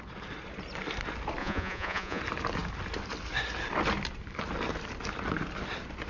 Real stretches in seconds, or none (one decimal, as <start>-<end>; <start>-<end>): 0.0-1.4; 2.2-6.1